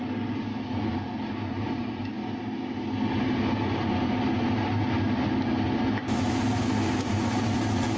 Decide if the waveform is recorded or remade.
recorded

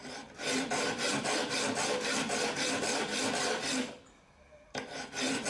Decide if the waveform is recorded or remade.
remade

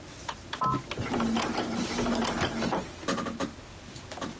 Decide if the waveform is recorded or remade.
recorded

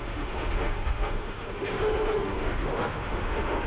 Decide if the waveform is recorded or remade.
remade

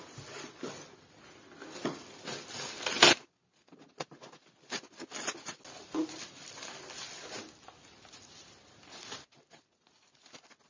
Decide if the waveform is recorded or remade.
recorded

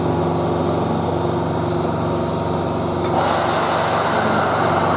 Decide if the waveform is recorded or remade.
recorded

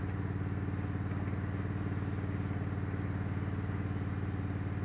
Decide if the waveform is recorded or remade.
recorded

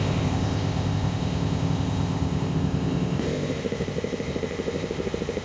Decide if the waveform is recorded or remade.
remade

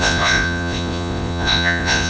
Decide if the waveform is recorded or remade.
remade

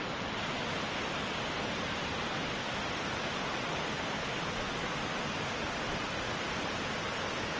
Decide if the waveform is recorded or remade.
recorded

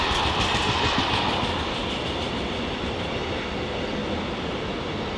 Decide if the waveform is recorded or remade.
recorded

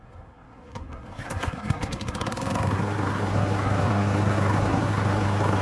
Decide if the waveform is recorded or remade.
remade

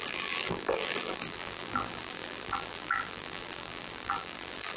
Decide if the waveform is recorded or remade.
remade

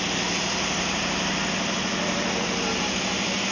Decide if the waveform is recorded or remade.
remade